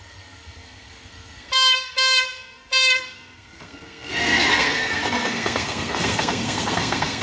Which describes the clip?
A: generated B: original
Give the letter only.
A